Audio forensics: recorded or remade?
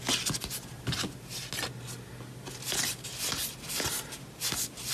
recorded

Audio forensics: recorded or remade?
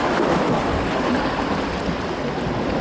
recorded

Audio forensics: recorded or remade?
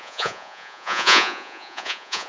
remade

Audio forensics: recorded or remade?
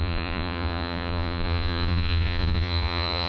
remade